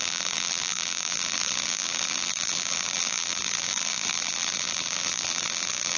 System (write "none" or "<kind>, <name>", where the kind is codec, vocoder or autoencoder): vocoder, BigVGAN v2